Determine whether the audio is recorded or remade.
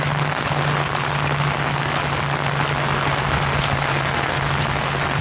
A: recorded